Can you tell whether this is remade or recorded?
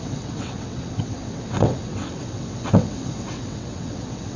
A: remade